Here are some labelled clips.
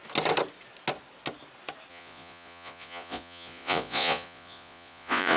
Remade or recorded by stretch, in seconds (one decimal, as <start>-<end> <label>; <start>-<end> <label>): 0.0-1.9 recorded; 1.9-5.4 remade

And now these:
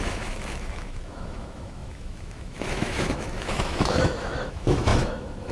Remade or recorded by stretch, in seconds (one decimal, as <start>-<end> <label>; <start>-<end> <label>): 0.0-5.5 remade

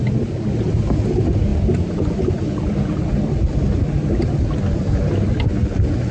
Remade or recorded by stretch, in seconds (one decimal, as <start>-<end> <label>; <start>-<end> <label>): 0.0-6.1 recorded